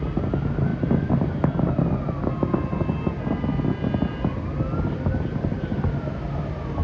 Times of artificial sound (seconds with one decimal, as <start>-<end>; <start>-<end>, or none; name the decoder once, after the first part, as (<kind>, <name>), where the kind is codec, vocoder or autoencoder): none